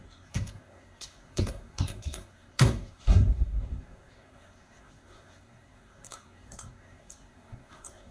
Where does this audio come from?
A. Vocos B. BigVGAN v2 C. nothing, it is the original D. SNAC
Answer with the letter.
D